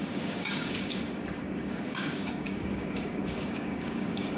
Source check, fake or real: fake